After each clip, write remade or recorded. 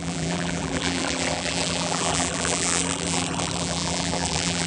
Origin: remade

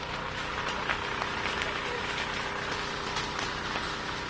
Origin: recorded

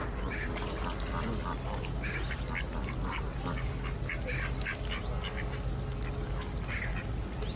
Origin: recorded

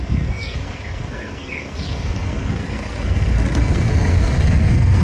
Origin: remade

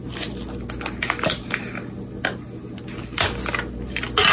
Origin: recorded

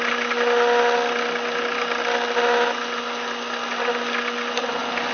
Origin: recorded